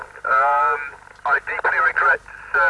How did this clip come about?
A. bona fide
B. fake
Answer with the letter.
A